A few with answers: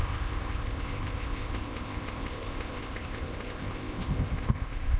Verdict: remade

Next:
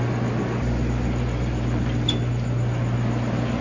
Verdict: recorded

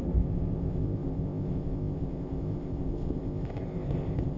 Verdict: remade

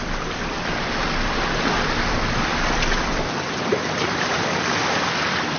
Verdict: recorded